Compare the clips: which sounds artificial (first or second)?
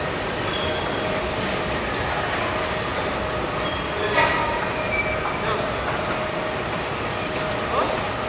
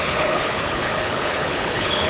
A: second